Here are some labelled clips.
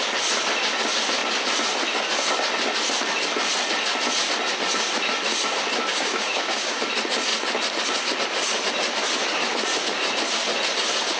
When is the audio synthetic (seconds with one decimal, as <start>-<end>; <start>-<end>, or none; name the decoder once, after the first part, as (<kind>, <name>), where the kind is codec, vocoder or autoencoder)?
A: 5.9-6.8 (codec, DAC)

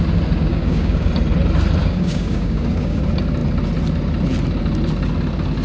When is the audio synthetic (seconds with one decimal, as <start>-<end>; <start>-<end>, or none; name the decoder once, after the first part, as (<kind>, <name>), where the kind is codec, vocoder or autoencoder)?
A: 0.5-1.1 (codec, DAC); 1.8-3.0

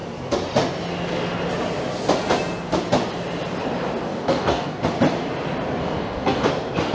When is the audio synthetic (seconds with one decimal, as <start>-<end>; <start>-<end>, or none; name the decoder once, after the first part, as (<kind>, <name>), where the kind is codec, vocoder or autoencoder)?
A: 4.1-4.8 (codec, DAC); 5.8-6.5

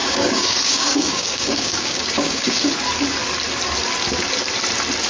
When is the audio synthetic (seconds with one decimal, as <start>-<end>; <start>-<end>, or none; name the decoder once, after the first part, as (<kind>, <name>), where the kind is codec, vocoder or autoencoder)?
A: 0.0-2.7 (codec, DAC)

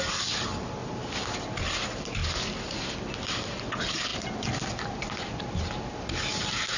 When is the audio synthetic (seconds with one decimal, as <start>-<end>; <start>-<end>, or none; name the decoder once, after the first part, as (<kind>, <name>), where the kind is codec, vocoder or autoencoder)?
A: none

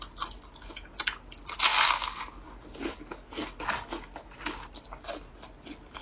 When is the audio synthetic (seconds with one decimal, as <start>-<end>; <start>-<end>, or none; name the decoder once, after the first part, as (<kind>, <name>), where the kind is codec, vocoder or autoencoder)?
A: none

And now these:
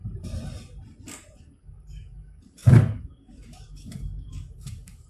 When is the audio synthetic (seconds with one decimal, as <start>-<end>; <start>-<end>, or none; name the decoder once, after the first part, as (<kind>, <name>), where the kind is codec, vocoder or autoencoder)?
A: 1.4-5.1 (codec, DAC)